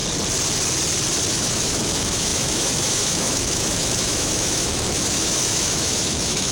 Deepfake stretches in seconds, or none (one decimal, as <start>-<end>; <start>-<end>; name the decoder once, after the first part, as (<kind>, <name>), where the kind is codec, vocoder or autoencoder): 1.3-6.5 (autoencoder, DAC-VAE)

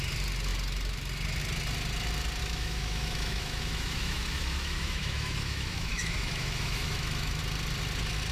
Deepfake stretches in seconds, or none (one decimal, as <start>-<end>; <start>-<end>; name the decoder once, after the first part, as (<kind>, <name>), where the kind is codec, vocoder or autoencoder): 2.4-7.4 (autoencoder, DAC-VAE)

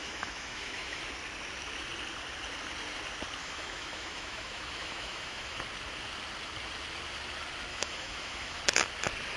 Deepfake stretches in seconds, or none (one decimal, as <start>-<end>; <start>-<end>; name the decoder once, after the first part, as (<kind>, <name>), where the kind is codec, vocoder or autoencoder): 0.0-1.0 (autoencoder, DAC-VAE); 3.4-5.6; 7.7-8.6